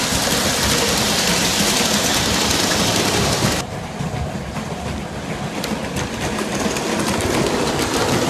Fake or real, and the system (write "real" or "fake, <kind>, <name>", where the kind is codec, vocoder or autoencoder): real